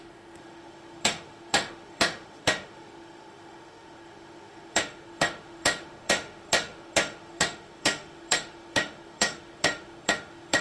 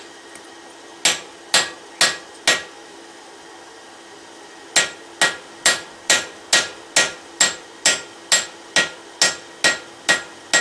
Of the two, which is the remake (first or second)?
first